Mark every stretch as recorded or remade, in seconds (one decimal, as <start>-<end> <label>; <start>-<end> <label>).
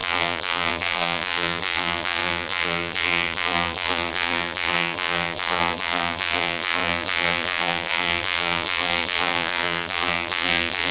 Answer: 0.0-10.9 remade